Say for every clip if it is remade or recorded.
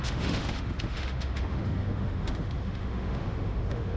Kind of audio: remade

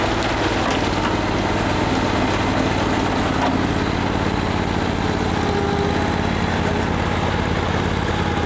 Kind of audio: recorded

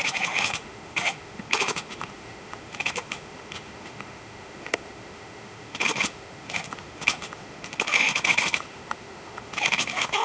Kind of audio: remade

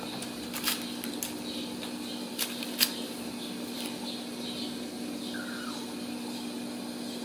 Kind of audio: recorded